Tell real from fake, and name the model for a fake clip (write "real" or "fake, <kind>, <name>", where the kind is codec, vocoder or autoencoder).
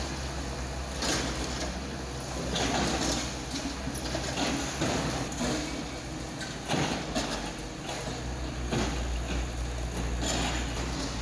real